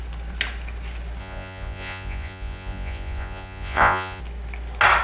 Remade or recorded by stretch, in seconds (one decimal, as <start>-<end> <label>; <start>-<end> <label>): 0.0-1.2 recorded; 1.2-4.2 remade; 4.2-5.0 recorded

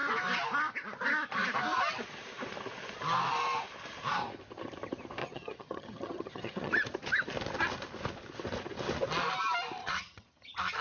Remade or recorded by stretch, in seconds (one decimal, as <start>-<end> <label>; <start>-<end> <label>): 0.0-5.2 recorded; 5.2-6.7 remade; 6.7-9.8 recorded; 9.8-10.8 remade

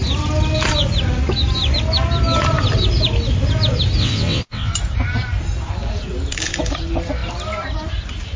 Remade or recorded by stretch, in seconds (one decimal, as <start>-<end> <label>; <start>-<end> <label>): 0.0-4.0 recorded; 4.0-4.7 remade; 4.7-8.4 recorded

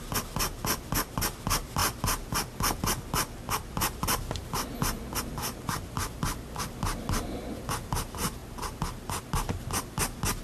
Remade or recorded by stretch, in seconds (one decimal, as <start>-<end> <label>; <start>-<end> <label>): 0.0-10.4 recorded

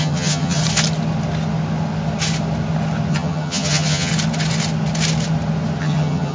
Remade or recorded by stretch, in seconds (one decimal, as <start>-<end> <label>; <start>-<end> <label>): 0.0-0.6 remade; 0.6-3.1 recorded; 3.1-4.1 remade; 4.1-5.8 recorded; 5.8-6.3 remade

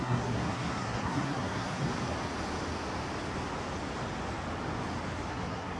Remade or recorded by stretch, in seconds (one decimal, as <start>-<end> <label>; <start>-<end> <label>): 0.0-1.8 remade; 1.8-5.3 recorded; 5.3-5.8 remade